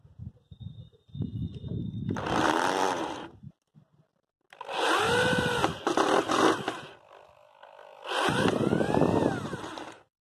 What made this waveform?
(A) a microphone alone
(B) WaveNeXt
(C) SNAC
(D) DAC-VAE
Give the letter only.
A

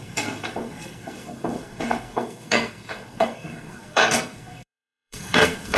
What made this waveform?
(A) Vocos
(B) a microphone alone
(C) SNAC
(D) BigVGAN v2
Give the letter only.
C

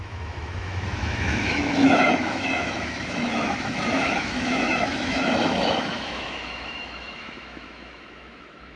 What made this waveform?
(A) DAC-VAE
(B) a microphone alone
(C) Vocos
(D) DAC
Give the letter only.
A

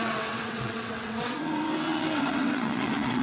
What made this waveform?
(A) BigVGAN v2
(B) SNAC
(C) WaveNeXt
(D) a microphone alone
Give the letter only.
C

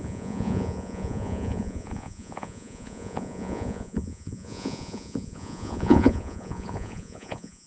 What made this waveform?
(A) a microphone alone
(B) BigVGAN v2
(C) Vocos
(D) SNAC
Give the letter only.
C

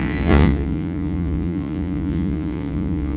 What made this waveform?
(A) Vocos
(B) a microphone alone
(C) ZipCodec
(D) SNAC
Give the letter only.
A